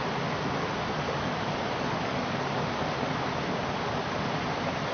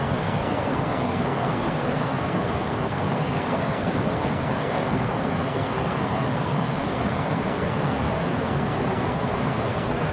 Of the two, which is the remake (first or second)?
second